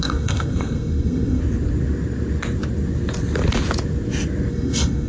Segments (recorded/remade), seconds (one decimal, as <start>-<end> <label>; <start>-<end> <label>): 0.0-1.4 remade; 1.4-4.5 recorded; 4.5-5.1 remade